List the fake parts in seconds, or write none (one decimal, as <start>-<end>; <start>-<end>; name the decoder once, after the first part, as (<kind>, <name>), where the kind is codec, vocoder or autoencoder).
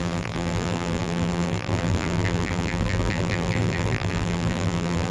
0.0-5.1 (vocoder, BigVGAN v2)